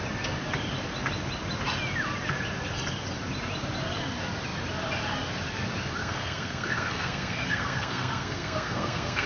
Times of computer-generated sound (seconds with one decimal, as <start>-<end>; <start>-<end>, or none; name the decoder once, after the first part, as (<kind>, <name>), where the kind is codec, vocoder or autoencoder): 6.0-9.3 (codec, SNAC)